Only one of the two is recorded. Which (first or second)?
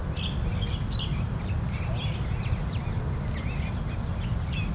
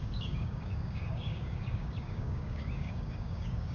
first